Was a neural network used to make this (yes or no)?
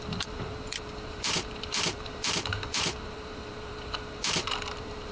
yes